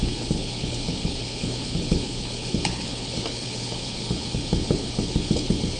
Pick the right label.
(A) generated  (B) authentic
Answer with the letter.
A